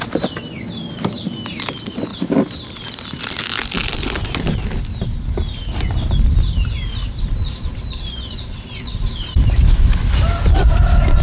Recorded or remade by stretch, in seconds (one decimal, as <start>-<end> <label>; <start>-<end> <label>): 0.0-2.1 recorded; 2.1-3.2 remade; 3.2-7.5 recorded; 7.5-9.9 remade; 9.9-11.2 recorded